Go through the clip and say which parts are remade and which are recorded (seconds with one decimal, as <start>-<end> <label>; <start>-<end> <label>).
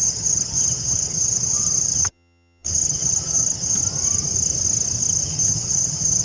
0.0-3.8 remade; 3.8-5.3 recorded; 5.3-6.2 remade